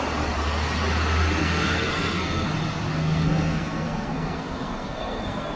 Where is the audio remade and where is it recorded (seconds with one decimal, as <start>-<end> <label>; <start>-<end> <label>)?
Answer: 0.0-1.4 recorded; 1.4-2.5 remade; 2.5-3.0 recorded; 3.0-5.6 remade